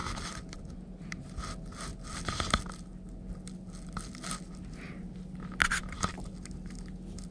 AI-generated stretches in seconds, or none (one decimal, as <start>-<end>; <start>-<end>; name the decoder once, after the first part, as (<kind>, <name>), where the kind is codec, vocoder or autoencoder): none